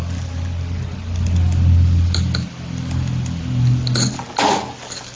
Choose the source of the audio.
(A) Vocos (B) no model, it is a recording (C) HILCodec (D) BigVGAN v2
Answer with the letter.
B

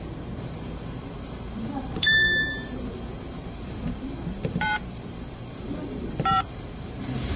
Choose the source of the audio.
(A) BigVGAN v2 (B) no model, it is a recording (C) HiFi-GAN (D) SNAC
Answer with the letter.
A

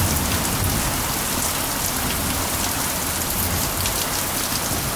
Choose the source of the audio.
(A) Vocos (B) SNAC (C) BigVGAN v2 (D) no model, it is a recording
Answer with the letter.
D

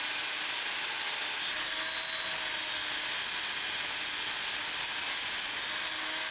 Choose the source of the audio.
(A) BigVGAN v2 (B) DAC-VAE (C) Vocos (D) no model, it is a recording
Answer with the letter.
D